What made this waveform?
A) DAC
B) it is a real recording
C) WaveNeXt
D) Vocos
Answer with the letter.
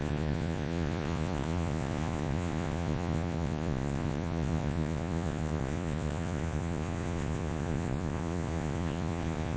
D